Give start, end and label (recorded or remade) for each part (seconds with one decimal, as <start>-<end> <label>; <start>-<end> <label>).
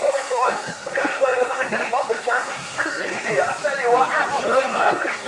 0.0-3.3 remade; 3.3-4.4 recorded; 4.4-5.3 remade